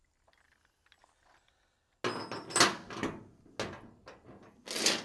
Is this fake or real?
real